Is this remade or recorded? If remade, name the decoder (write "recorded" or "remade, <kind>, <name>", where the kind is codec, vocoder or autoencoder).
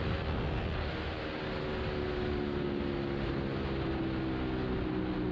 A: recorded